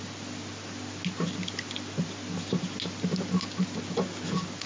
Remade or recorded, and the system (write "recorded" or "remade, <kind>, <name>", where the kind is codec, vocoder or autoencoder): recorded